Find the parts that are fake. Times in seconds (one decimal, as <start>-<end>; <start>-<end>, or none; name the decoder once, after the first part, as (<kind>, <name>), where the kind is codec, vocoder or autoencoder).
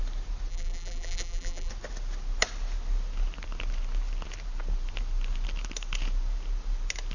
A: 0.5-1.7 (vocoder, BigVGAN v2)